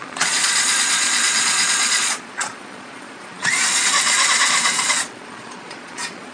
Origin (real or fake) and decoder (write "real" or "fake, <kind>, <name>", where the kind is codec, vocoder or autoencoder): fake, vocoder, Vocos